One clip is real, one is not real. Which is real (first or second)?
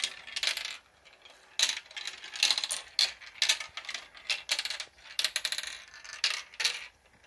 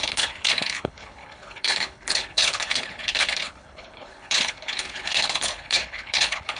first